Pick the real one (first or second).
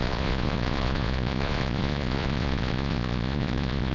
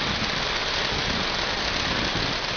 second